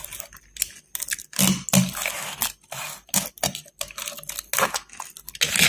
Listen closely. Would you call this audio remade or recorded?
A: recorded